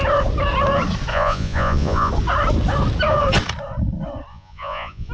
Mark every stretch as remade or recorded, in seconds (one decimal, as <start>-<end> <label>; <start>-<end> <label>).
0.0-1.1 recorded; 1.1-2.1 remade; 2.1-4.3 recorded; 4.3-5.1 remade